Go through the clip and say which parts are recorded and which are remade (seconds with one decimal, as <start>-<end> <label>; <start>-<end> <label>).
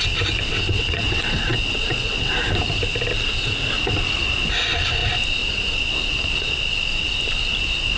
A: 0.0-0.5 recorded; 0.5-2.3 remade; 2.3-8.0 recorded